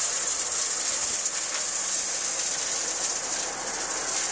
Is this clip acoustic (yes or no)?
yes